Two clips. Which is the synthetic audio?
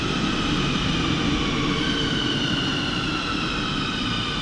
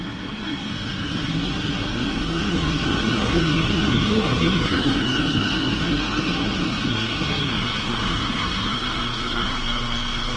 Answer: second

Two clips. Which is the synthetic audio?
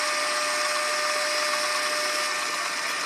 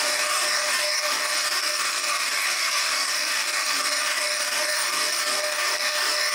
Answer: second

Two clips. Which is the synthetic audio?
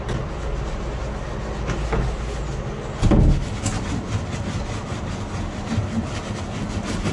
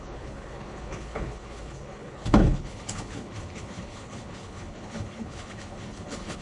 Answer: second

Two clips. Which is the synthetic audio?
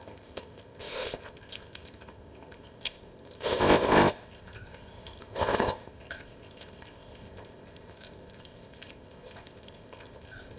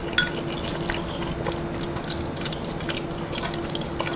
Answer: first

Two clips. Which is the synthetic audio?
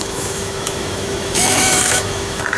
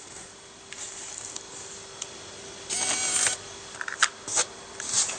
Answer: first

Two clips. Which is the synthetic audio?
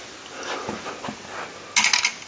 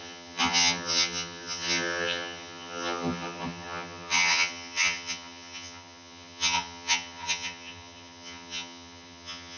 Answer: second